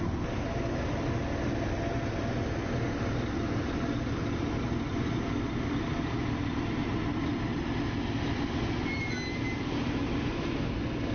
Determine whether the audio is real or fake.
real